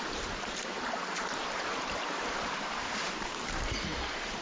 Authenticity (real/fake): fake